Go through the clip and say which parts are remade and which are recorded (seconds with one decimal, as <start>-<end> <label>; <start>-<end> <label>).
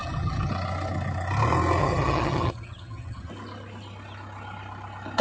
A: 0.0-0.5 remade; 0.5-1.8 recorded; 1.8-3.3 remade; 3.3-5.2 recorded